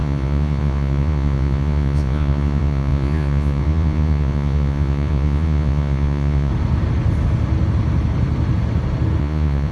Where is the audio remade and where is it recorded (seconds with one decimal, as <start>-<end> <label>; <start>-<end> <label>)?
0.0-6.5 remade; 6.5-9.2 recorded; 9.2-9.7 remade